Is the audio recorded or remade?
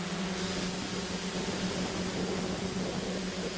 recorded